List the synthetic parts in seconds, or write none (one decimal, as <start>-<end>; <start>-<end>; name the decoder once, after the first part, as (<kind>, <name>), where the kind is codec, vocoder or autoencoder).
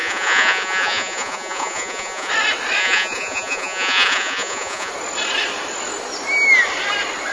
0.0-2.3 (vocoder, Vocos); 2.8-4.9